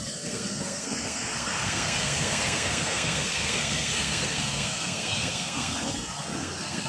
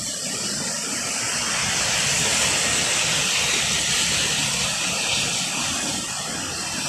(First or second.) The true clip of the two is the second